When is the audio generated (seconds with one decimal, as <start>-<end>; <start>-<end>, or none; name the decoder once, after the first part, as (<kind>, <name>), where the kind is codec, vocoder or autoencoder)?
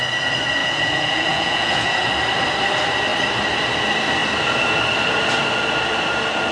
0.6-2.1 (vocoder, Vocos)